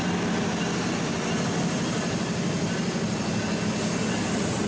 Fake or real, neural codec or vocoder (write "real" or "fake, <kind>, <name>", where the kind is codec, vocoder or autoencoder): real